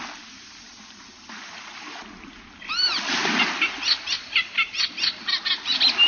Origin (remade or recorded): recorded